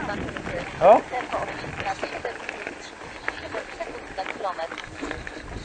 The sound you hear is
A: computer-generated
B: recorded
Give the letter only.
B